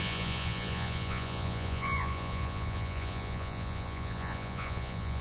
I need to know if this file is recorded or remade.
remade